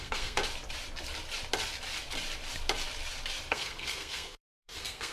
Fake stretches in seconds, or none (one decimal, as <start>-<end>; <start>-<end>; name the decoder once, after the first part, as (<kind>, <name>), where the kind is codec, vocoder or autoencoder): 0.0-0.4 (codec, SNAC); 3.5-5.1